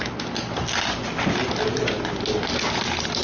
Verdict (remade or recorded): recorded